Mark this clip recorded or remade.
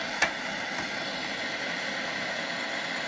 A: recorded